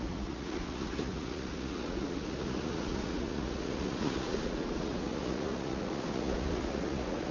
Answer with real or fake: fake